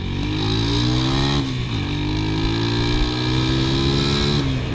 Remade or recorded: recorded